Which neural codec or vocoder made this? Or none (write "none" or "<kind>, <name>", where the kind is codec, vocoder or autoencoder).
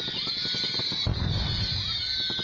none